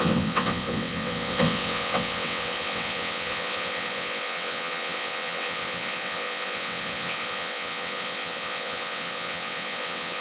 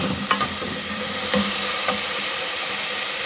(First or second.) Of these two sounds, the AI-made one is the first